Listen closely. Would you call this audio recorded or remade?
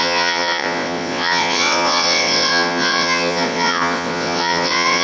remade